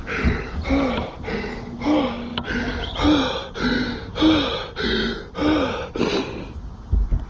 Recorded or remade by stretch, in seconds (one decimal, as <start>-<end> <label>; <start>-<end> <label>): 0.0-7.3 recorded

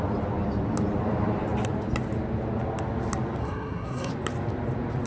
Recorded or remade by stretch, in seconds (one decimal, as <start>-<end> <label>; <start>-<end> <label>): 0.0-3.4 recorded; 3.4-4.1 remade; 4.1-5.1 recorded

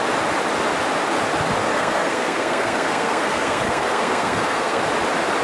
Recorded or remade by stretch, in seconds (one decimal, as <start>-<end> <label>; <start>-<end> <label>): 0.0-1.6 recorded; 1.6-4.8 remade; 4.8-5.4 recorded